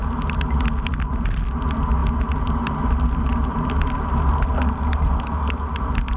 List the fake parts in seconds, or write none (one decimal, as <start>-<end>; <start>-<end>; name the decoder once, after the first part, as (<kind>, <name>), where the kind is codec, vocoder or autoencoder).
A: none